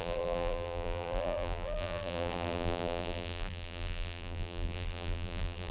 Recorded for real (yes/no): no